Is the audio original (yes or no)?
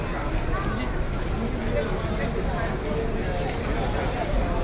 yes